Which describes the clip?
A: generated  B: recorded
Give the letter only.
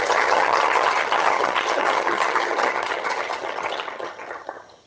A